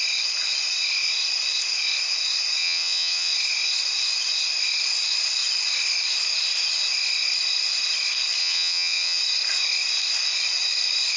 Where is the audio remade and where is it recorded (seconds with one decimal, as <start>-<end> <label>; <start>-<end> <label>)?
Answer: 0.0-2.6 recorded; 2.6-3.3 remade; 3.3-8.4 recorded; 8.4-9.2 remade; 9.2-11.2 recorded